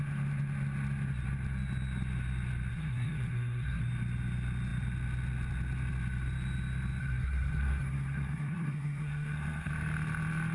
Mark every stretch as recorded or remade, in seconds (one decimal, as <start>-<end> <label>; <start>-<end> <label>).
0.0-2.7 recorded; 2.7-3.8 remade; 3.8-7.0 recorded; 7.0-9.7 remade; 9.7-10.5 recorded